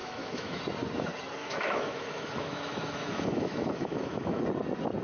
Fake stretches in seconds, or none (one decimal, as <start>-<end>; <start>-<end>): 0.0-0.6; 1.4-4.4